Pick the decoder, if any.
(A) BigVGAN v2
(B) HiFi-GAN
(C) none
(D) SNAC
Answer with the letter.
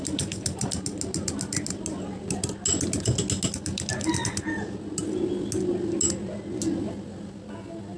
C